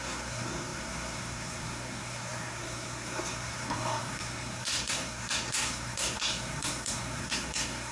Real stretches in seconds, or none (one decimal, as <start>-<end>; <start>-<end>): none